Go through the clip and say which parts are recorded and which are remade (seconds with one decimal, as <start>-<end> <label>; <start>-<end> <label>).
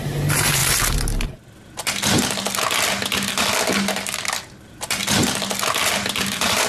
0.0-0.6 remade; 0.6-4.6 recorded; 4.6-5.0 remade; 5.0-5.7 recorded; 5.7-6.7 remade